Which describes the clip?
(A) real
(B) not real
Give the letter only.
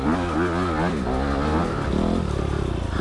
A